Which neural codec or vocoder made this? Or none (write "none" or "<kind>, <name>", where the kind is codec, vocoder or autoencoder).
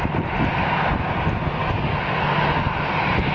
none